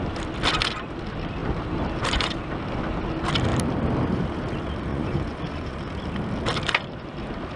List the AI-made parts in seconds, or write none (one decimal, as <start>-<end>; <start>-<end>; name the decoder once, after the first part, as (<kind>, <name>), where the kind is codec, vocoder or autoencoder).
4.9-5.8 (vocoder, Vocos)